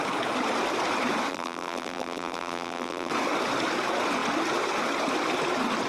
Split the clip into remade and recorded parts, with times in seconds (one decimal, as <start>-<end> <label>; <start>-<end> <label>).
0.0-1.3 recorded; 1.3-3.1 remade; 3.1-5.9 recorded